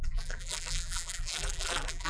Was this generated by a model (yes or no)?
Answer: yes